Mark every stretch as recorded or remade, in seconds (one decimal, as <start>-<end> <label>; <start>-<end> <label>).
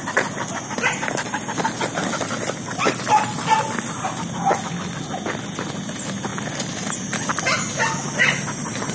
0.0-8.9 recorded